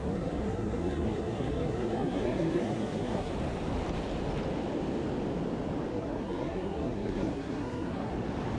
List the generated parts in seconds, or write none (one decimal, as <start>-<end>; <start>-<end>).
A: 0.0-3.3; 5.9-8.1